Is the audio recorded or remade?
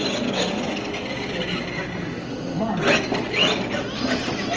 recorded